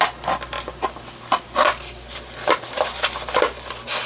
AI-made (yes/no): no